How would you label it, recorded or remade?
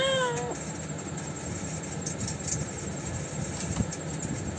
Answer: recorded